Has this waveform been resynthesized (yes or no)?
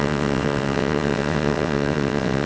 yes